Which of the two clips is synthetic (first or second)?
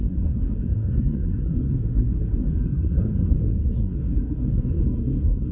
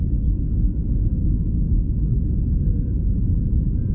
first